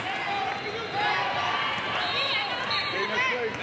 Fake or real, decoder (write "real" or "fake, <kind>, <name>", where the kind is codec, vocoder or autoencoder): real